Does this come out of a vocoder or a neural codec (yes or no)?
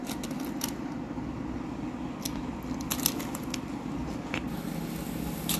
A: no